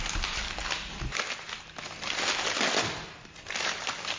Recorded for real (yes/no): yes